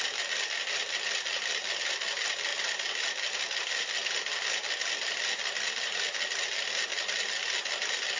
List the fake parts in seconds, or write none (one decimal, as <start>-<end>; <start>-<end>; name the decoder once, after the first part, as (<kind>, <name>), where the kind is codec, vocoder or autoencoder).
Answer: none